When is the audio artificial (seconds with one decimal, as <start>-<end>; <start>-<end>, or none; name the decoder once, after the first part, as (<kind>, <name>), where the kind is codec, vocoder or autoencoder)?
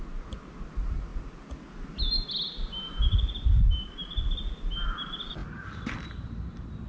none